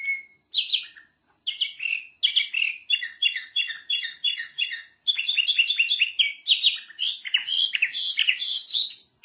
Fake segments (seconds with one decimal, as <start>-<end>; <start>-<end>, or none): 8.2-9.2